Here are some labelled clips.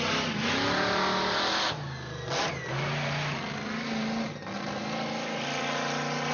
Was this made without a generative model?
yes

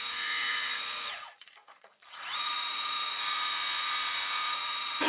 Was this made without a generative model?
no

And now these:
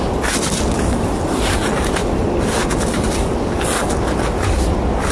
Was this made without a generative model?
yes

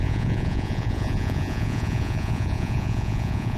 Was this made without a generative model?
no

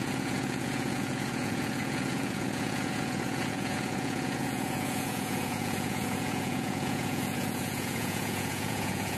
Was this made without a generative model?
no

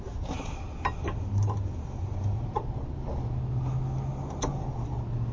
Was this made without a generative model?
yes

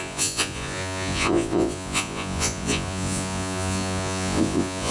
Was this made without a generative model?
no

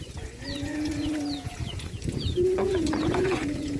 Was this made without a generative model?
no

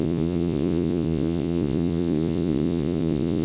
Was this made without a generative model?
no